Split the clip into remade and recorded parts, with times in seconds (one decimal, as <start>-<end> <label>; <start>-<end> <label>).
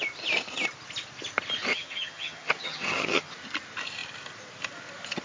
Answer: 0.0-1.7 recorded; 1.7-3.3 remade; 3.3-5.2 recorded